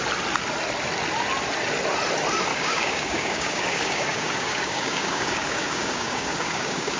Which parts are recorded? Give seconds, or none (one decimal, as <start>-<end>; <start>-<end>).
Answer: 0.0-2.5